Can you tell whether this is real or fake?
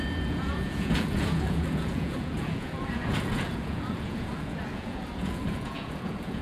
fake